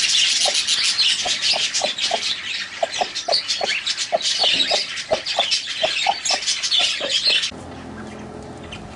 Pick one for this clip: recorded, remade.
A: recorded